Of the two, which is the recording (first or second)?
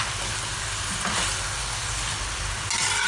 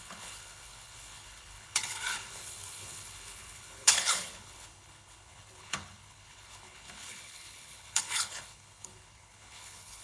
first